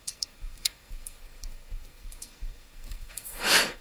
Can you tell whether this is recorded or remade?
remade